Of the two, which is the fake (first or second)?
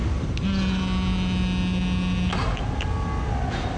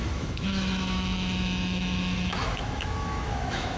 second